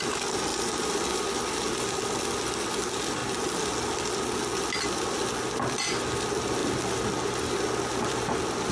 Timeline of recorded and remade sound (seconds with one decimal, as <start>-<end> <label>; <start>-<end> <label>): 0.0-8.7 recorded